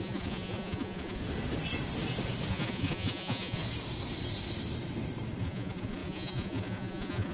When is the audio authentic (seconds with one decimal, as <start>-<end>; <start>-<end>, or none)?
1.2-2.5; 3.6-5.4